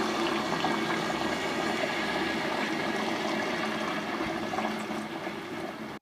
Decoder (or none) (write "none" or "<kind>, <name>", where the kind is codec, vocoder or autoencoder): none